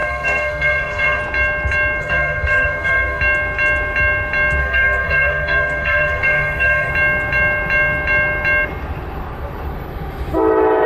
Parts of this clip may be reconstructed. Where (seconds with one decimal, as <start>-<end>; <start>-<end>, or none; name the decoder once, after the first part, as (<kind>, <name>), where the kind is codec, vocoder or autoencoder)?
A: 0.0-1.2 (codec, SNAC); 2.0-3.2; 4.6-6.9